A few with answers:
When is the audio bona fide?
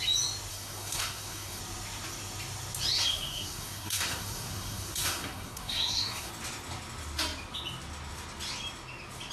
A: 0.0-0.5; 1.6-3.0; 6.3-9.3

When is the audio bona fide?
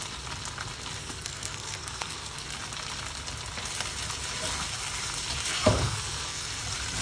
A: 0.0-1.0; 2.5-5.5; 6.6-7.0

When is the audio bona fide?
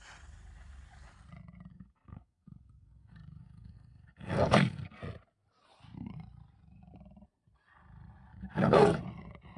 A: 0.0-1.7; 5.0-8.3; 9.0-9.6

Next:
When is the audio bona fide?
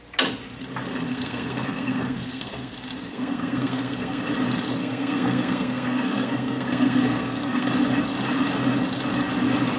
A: 0.0-1.1; 2.7-3.1; 4.2-4.8; 7.7-9.8